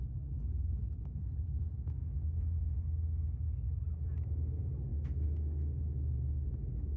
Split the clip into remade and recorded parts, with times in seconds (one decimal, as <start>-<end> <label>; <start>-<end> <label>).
0.0-4.9 recorded; 4.9-5.8 remade; 5.8-7.0 recorded